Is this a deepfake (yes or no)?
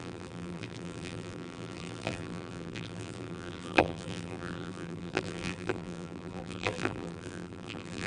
yes